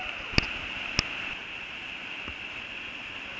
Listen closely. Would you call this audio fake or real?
real